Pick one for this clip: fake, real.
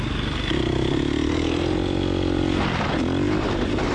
real